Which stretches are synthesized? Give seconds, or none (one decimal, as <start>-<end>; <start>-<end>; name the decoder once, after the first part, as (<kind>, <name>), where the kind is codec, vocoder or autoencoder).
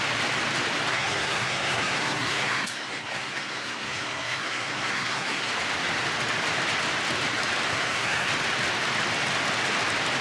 0.9-5.5 (codec, SNAC); 7.7-8.3